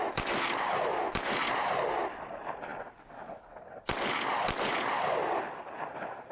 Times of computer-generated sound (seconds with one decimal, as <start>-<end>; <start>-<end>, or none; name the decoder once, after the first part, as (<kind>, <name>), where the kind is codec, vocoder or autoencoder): none